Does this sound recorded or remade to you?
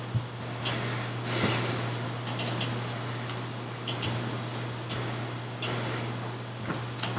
recorded